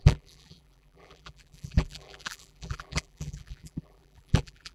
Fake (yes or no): yes